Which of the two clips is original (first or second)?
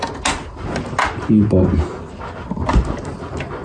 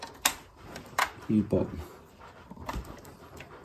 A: first